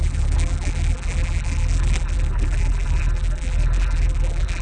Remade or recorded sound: remade